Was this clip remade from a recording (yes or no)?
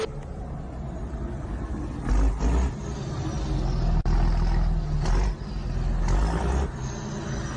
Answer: no